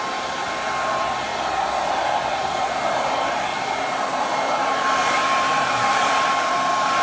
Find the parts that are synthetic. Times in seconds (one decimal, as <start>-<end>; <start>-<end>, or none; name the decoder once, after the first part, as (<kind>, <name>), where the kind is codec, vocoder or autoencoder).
0.0-1.3 (vocoder, BigVGAN v2); 2.3-7.0